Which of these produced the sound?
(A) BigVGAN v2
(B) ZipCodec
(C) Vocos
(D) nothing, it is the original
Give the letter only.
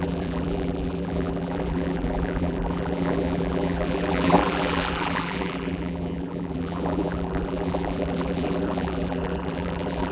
A